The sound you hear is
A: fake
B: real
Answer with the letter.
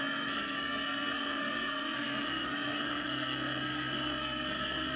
A